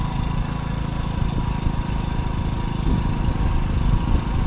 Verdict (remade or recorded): recorded